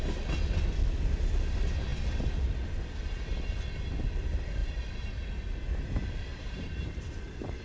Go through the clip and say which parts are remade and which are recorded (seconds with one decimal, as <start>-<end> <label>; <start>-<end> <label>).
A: 0.0-4.6 recorded; 4.6-5.3 remade; 5.3-6.3 recorded; 6.3-7.6 remade